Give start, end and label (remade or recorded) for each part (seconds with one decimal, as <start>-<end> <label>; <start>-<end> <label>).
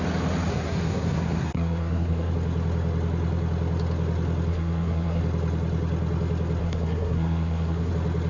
0.0-0.5 recorded; 0.5-2.3 remade; 2.3-4.5 recorded; 4.5-5.2 remade; 5.2-6.6 recorded; 6.6-7.9 remade; 7.9-8.3 recorded